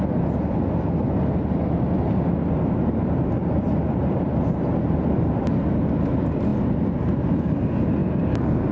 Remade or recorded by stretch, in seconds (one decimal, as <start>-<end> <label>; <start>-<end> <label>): 0.0-3.4 recorded; 3.4-5.7 remade; 5.7-8.7 recorded